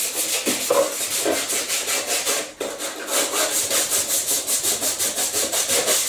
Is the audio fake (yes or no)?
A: no